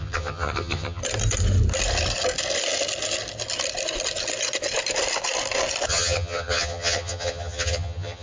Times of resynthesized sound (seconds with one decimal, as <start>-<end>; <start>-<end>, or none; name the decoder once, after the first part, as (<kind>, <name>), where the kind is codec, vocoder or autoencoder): 0.0-1.0 (vocoder, HiFi-GAN); 5.9-8.2